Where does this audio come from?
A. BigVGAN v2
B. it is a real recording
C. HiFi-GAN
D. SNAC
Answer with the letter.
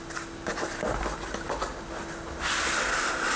B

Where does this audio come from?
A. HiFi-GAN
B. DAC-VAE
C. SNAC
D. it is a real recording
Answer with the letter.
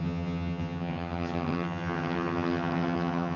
A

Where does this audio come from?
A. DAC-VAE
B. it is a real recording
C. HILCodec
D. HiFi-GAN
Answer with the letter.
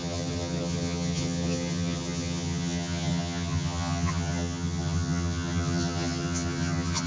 D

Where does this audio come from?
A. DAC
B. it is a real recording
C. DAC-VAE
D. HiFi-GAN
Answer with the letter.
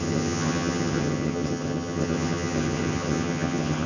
D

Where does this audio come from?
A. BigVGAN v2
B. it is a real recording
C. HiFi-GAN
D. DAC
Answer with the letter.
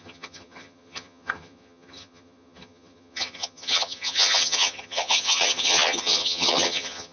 C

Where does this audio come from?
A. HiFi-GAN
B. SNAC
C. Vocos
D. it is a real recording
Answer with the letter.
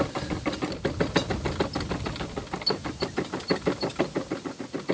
D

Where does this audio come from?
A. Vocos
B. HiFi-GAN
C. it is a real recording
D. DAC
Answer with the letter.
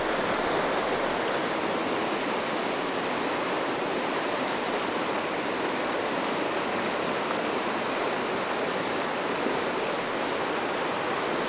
C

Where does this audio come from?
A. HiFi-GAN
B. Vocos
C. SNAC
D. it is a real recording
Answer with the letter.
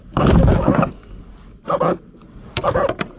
D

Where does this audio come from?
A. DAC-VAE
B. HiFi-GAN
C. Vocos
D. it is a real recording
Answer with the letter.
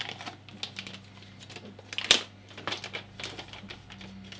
D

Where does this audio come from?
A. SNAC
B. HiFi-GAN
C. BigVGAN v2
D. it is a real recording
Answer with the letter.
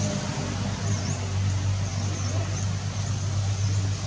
D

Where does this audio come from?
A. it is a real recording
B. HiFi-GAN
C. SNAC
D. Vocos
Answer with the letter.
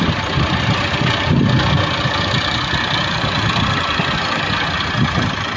A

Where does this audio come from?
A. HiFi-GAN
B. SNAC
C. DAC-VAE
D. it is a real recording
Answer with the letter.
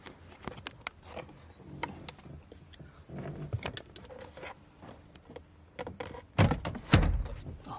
D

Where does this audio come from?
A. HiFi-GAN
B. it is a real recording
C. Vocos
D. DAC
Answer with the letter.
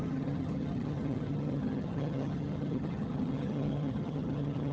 A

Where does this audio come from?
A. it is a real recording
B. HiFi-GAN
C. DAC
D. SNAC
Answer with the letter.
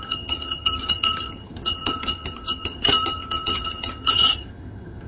B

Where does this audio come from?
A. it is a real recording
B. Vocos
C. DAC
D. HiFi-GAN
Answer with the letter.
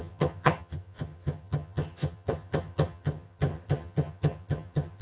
D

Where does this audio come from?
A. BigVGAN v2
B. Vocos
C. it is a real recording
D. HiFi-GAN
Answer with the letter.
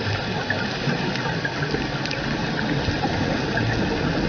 C